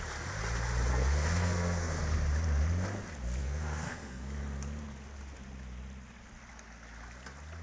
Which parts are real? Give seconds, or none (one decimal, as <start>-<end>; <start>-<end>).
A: 0.0-0.9; 2.0-3.4; 4.4-7.6